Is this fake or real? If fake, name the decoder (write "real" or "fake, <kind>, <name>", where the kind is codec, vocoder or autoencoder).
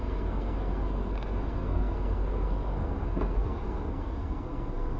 fake, codec, SNAC